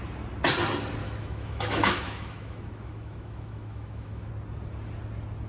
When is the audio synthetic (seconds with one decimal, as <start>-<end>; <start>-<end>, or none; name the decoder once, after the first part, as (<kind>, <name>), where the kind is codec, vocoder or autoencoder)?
1.0-4.3 (autoencoder, DAC-VAE)